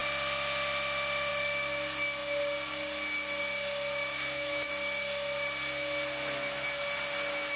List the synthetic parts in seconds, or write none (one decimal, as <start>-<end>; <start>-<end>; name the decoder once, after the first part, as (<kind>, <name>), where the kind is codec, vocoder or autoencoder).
4.1-4.7 (autoencoder, DAC-VAE)